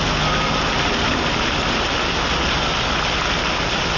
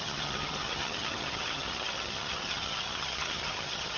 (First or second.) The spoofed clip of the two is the second